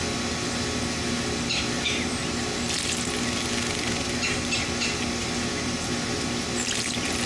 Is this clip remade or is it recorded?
recorded